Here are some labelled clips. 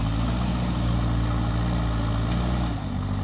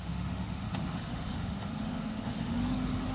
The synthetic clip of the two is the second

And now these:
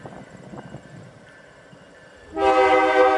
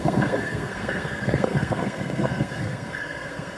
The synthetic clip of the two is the second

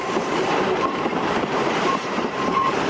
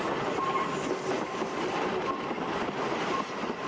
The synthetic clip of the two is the first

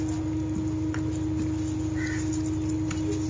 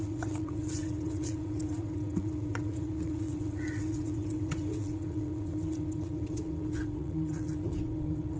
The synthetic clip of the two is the second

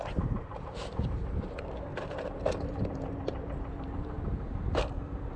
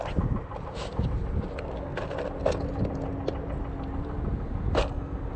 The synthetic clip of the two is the first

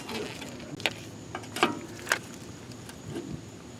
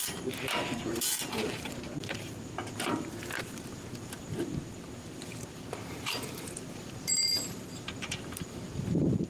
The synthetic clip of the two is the second